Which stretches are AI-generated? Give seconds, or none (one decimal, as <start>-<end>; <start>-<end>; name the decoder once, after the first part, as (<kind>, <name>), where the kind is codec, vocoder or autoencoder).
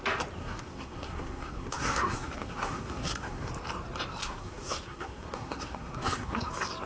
0.4-3.5 (codec, SNAC); 4.2-6.5